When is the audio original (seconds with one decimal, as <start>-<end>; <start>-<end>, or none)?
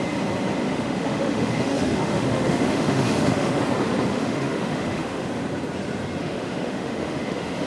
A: 0.0-0.6; 3.6-4.1; 5.3-6.2